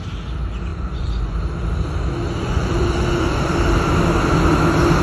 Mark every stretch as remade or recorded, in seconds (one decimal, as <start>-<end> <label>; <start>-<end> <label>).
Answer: 0.0-0.7 recorded; 0.7-1.4 remade; 1.4-2.4 recorded; 2.4-3.5 remade; 3.5-5.0 recorded